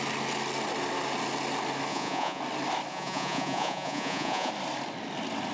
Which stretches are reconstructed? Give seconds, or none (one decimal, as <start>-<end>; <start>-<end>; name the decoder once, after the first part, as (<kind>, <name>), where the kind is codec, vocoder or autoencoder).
1.9-2.4 (vocoder, Vocos); 2.9-4.5